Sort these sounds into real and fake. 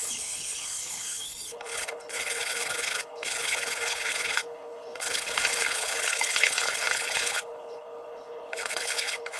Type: fake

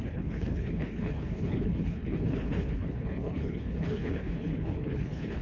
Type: fake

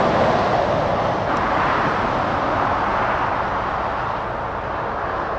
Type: real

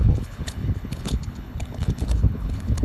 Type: fake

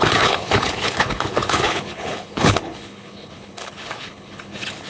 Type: fake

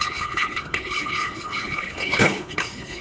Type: fake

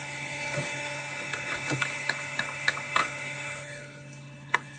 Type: fake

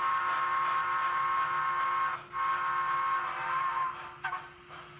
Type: real